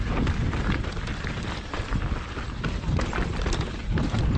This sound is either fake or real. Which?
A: real